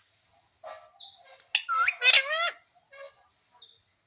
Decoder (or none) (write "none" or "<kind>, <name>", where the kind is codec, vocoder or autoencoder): none